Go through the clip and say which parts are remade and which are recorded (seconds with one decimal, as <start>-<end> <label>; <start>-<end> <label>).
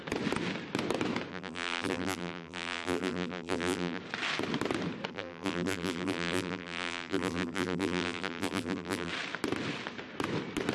0.0-1.3 recorded; 1.3-4.0 remade; 4.0-5.1 recorded; 5.1-9.1 remade; 9.1-10.7 recorded